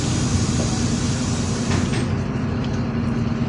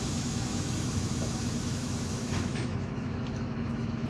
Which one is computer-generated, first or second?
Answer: second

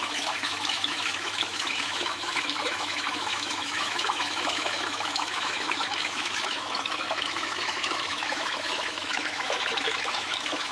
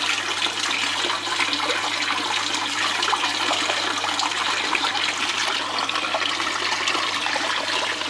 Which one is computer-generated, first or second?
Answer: first